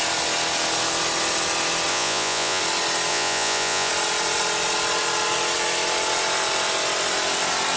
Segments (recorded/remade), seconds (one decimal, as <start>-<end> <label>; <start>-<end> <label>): 0.0-1.9 recorded; 1.9-2.6 remade; 2.6-3.1 recorded; 3.1-3.9 remade; 3.9-7.8 recorded